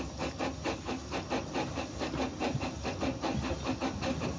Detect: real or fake real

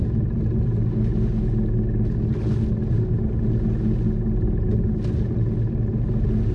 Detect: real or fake real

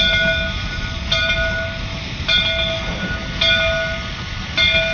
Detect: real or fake real